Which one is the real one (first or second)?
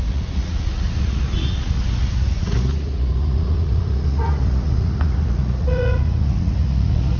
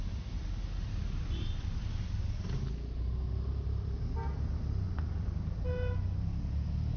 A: second